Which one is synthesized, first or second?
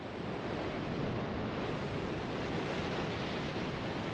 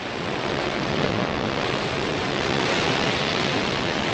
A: second